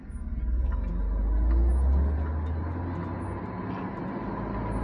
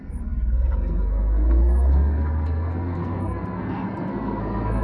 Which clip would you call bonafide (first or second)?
first